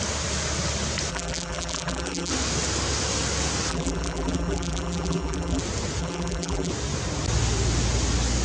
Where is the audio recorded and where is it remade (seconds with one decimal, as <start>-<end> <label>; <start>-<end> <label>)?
0.0-1.1 recorded; 1.1-2.3 remade; 2.3-3.7 recorded; 3.7-5.6 remade; 5.6-6.0 recorded; 6.0-6.7 remade; 6.7-8.4 recorded

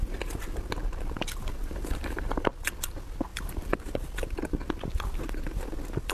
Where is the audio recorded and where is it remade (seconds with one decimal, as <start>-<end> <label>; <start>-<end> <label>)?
0.0-1.6 recorded; 1.6-2.5 remade; 2.5-6.1 recorded

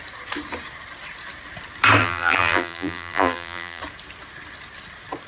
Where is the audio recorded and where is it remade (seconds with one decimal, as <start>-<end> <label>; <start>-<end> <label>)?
0.0-2.0 recorded; 2.0-3.8 remade; 3.8-5.3 recorded

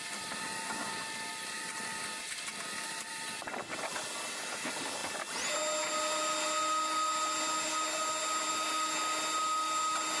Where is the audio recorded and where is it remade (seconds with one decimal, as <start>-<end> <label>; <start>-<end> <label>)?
0.0-10.2 recorded

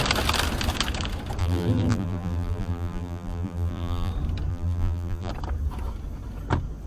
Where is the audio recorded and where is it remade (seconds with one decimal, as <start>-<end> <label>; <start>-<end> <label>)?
0.0-1.4 recorded; 1.4-4.1 remade; 4.1-4.5 recorded; 4.5-5.3 remade; 5.3-6.9 recorded